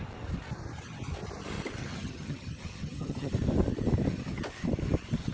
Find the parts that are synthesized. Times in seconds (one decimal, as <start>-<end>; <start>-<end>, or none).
1.8-3.3